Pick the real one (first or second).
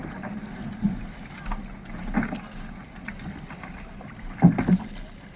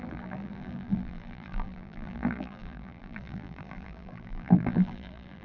first